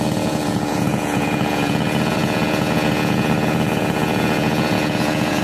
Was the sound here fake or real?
fake